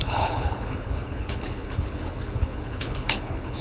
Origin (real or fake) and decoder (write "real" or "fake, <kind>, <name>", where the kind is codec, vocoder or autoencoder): fake, codec, HILCodec